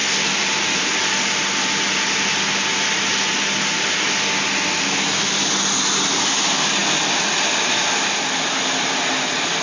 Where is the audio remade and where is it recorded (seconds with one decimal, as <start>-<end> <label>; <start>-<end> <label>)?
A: 0.0-9.6 recorded